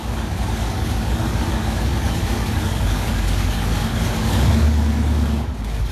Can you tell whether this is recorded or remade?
remade